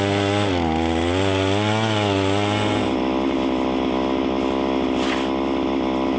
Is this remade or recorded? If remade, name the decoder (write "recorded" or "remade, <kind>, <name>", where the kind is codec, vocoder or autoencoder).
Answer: recorded